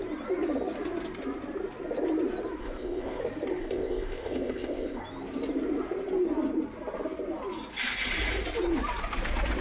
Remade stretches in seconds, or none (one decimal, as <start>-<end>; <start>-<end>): 2.6-3.2; 3.6-5.0